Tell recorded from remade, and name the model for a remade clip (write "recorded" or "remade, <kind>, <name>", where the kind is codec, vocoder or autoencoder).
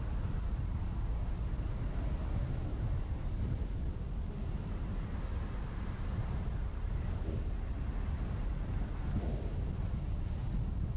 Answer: recorded